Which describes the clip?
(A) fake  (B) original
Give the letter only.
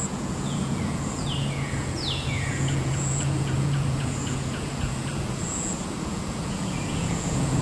A